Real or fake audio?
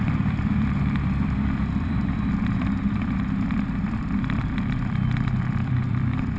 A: fake